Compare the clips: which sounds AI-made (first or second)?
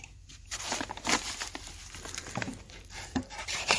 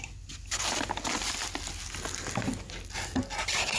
first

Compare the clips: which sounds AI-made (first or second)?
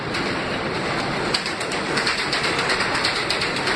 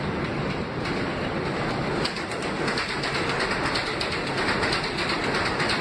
first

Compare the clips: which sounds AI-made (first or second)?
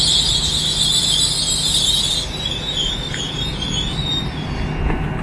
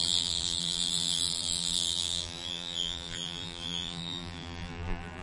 second